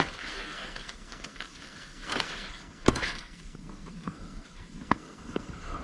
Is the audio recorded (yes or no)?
no